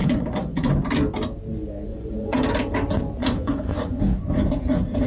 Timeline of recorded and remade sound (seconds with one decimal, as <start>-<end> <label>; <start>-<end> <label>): 0.0-0.7 remade; 0.7-1.9 recorded; 1.9-2.5 remade; 2.5-3.2 recorded; 3.2-4.0 remade; 4.0-5.1 recorded